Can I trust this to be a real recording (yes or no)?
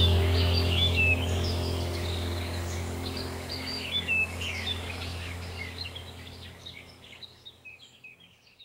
no